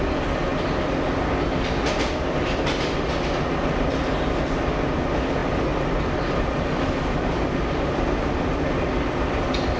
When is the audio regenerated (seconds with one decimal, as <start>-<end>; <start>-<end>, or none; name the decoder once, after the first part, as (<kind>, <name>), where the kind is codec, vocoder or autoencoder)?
none